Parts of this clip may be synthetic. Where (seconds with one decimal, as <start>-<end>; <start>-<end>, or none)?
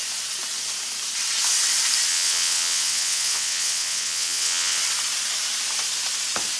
2.1-4.8